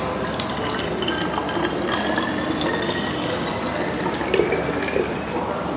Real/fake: real